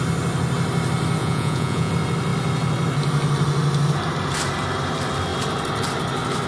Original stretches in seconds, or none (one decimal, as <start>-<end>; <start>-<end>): 0.0-1.2; 1.9-6.5